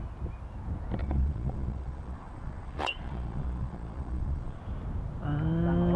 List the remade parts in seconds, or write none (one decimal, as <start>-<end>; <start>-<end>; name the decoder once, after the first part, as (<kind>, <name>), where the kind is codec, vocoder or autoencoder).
1.0-4.6 (vocoder, Vocos)